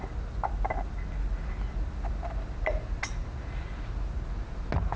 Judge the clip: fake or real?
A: real